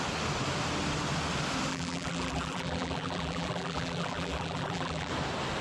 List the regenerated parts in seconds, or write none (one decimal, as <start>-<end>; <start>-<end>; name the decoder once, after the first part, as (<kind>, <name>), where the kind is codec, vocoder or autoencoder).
1.7-5.1 (vocoder, BigVGAN v2)